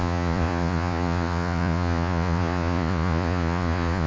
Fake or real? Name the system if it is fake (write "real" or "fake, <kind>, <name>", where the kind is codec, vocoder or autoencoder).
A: fake, vocoder, Vocos